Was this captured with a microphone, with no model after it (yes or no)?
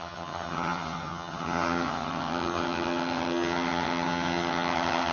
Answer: no